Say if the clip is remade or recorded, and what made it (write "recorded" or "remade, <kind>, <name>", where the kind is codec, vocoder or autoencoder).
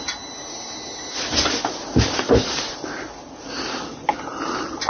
recorded